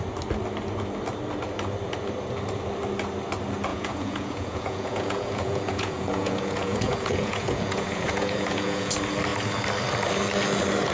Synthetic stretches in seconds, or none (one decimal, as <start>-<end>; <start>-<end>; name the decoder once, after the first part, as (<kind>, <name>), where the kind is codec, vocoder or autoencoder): 3.7-8.9 (vocoder, Vocos)